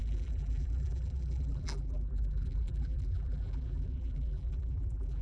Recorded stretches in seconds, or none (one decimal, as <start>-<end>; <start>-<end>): none